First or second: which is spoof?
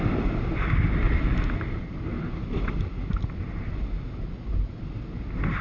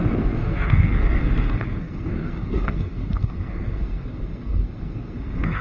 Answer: second